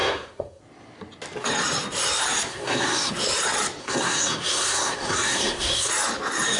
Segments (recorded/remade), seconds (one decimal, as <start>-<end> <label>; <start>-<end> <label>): 0.0-0.6 remade; 0.6-2.5 recorded; 2.5-3.1 remade; 3.1-3.8 recorded; 3.8-5.9 remade; 5.9-6.6 recorded